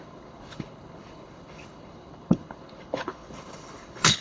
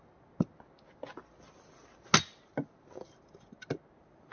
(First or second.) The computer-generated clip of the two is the first